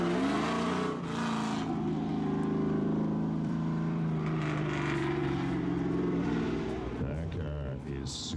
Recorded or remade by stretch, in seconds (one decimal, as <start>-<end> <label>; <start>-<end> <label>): 0.0-2.1 recorded; 2.1-6.6 remade; 6.6-8.4 recorded